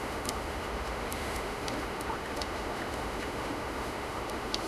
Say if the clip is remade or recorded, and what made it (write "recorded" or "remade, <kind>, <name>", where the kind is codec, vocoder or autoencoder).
remade, autoencoder, DAC-VAE